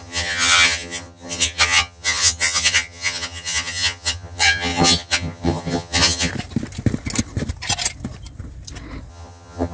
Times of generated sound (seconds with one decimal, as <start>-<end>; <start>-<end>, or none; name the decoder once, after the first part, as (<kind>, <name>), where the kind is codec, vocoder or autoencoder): 0.0-6.3 (vocoder, HiFi-GAN); 9.1-9.7

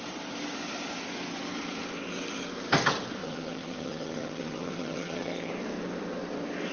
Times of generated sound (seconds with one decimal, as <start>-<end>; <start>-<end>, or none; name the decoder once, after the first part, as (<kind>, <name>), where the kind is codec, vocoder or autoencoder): 3.2-5.5 (vocoder, HiFi-GAN)

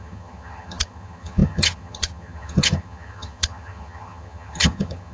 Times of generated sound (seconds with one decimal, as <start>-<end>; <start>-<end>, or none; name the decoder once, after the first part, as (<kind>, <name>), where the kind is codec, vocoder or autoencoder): 0.0-5.1 (vocoder, HiFi-GAN)

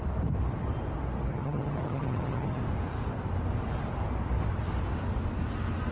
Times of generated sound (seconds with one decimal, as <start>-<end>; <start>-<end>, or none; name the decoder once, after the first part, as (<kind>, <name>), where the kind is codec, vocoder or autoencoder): 1.3-2.6 (vocoder, HiFi-GAN)

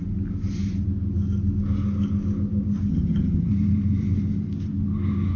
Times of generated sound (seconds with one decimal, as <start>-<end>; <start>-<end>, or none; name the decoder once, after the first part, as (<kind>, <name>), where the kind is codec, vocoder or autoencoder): 2.9-3.5 (vocoder, HiFi-GAN)

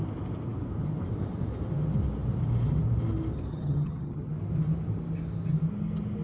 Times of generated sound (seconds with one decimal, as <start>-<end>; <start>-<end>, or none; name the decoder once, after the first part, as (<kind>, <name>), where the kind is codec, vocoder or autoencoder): 3.5-4.3 (vocoder, HiFi-GAN)

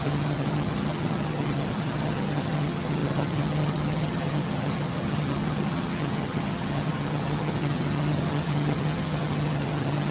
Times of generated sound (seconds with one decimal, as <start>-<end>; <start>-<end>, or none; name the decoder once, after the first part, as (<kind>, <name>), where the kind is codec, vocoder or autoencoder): 0.0-10.1 (vocoder, HiFi-GAN)

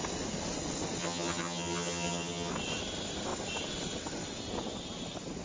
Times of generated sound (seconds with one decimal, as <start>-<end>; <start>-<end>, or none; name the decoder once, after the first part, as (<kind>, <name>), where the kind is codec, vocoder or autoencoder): 1.0-2.5 (vocoder, HiFi-GAN)